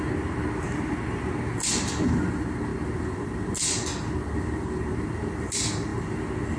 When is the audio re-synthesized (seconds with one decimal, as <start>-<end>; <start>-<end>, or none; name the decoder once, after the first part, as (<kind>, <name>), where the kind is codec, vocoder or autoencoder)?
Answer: none